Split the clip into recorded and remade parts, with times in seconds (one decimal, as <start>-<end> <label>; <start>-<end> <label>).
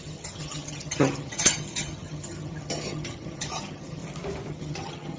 0.0-4.0 remade; 4.0-4.5 recorded; 4.5-5.2 remade